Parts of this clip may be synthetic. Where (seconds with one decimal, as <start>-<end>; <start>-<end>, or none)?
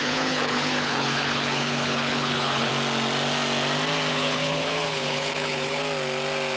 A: 0.0-2.7; 4.1-5.8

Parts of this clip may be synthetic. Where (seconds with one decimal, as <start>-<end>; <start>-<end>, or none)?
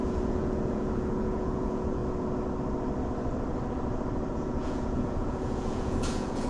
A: 0.0-2.0; 4.3-6.5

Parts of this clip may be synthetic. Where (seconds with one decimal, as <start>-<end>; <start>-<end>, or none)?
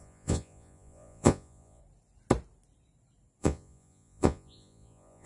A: 0.0-1.8; 3.4-5.3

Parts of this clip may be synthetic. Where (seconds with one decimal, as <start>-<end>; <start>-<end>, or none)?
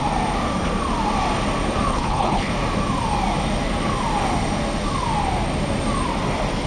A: 1.9-2.5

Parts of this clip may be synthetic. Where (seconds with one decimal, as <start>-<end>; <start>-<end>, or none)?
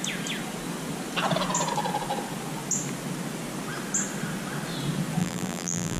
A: 5.2-6.0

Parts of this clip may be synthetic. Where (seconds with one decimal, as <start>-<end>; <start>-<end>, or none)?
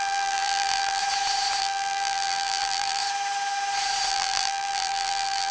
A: 0.0-1.0; 1.6-3.0; 4.1-5.5